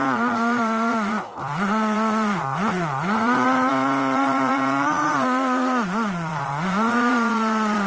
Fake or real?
fake